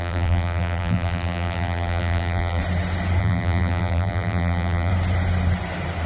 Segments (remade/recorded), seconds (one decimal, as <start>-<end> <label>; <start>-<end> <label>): 0.0-2.6 remade; 2.6-3.2 recorded; 3.2-4.9 remade; 4.9-6.1 recorded